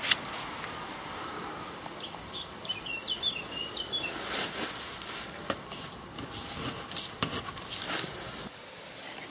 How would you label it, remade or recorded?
remade